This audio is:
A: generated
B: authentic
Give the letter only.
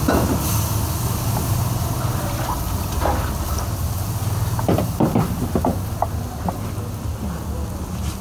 B